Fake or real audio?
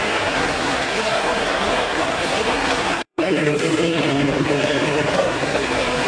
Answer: fake